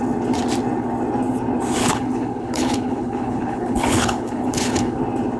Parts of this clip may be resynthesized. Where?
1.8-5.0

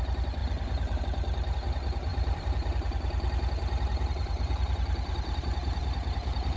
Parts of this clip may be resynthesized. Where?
0.4-1.0; 2.1-3.0; 3.9-5.4

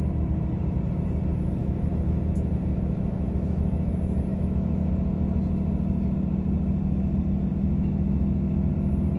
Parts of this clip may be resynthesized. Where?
1.6-3.9; 4.3-4.9; 7.5-8.7

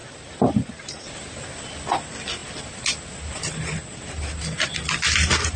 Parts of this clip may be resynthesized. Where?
0.0-1.4